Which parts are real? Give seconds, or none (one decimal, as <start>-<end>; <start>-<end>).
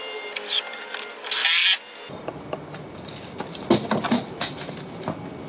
0.0-5.5